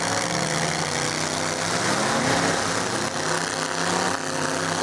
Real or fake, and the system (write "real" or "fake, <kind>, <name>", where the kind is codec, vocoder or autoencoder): real